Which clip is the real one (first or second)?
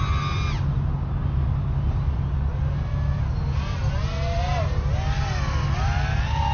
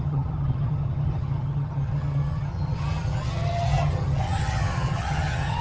first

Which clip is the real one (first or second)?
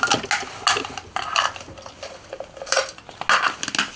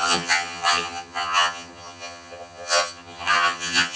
first